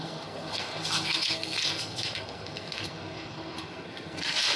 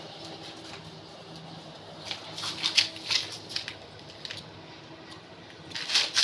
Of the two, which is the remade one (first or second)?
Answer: first